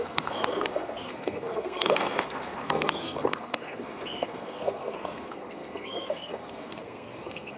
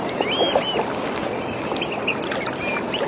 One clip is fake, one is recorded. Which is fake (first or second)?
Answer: first